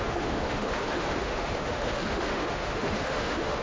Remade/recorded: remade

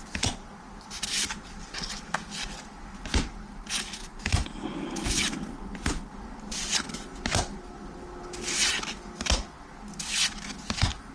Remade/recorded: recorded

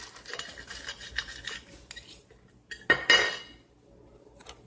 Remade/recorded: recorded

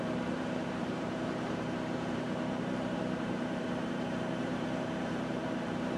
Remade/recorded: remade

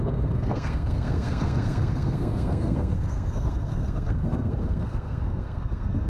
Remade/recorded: remade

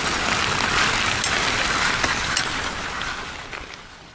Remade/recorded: recorded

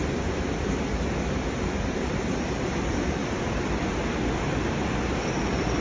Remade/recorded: recorded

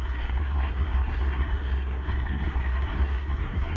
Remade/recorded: remade